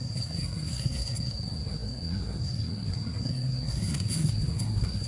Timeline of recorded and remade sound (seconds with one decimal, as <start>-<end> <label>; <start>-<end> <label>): 0.0-5.1 remade